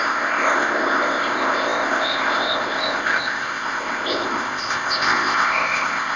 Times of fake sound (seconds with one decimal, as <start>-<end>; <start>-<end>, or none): 0.0-6.2